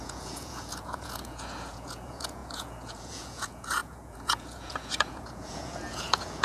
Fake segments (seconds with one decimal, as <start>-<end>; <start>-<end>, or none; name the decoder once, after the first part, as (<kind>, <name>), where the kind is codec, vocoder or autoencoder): 0.0-6.4 (vocoder, Vocos)